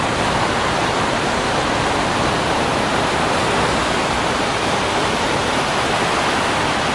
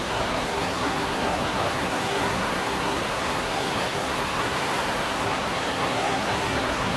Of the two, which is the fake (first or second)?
second